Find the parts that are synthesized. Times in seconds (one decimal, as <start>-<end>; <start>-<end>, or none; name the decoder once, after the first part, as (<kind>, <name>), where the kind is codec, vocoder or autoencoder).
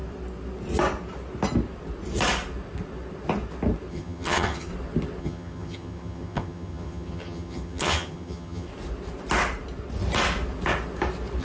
3.9-4.7 (vocoder, HiFi-GAN); 5.2-8.7